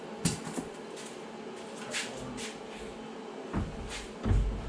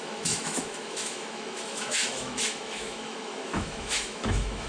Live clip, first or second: first